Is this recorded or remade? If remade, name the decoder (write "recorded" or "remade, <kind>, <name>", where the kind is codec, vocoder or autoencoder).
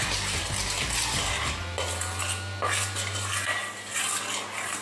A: recorded